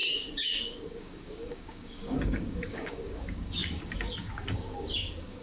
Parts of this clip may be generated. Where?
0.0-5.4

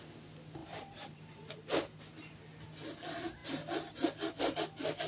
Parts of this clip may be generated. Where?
0.6-2.0

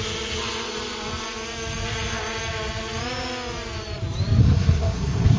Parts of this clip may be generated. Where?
4.4-5.4

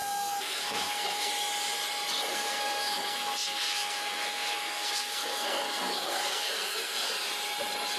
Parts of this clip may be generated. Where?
0.0-1.3; 2.3-7.1